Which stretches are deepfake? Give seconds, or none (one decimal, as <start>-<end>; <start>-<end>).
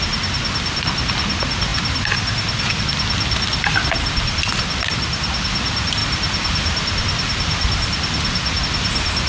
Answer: none